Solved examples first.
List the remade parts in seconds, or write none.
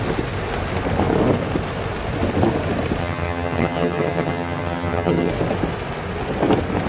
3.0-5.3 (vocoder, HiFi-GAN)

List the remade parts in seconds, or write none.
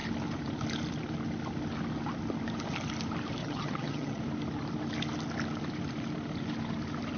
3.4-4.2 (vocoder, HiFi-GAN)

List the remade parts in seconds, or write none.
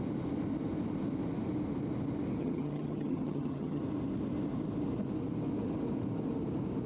2.4-3.8 (vocoder, HiFi-GAN)